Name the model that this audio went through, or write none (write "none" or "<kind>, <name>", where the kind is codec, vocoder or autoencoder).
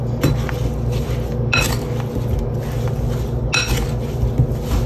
none